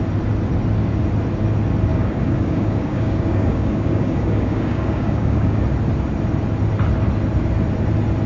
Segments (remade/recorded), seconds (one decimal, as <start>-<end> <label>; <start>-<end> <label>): 0.0-1.9 recorded; 1.9-5.6 remade; 5.6-8.3 recorded